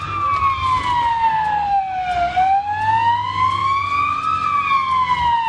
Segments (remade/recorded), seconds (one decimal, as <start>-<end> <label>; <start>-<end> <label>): 0.0-1.1 recorded; 1.1-1.8 remade; 1.8-5.5 recorded